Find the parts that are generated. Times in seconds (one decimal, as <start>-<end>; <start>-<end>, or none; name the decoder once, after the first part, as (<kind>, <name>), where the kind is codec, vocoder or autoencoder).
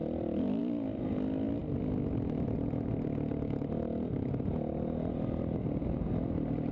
none